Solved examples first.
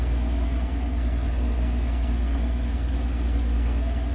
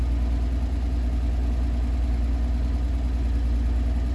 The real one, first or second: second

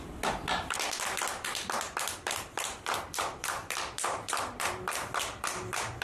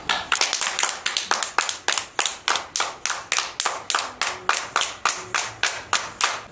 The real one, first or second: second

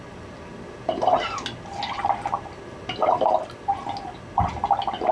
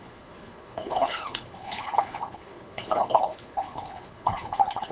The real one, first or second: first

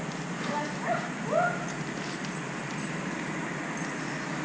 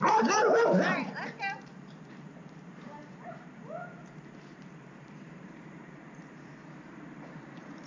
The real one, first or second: first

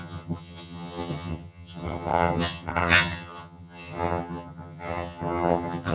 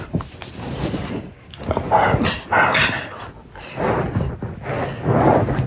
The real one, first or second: second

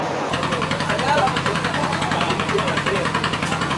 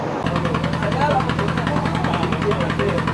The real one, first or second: second